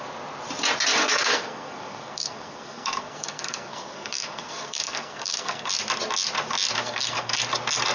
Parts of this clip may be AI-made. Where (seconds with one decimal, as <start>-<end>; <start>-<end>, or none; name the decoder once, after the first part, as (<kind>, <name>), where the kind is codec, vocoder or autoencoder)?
1.0-5.7 (codec, SNAC); 6.8-7.4